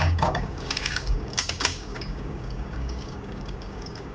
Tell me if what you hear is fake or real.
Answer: fake